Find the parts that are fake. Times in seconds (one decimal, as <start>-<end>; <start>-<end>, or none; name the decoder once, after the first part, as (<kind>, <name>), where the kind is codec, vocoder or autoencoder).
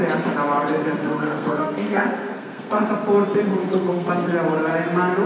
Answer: 1.0-2.9 (codec, SNAC); 3.6-4.1